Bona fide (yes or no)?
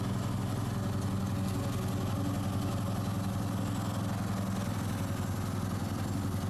yes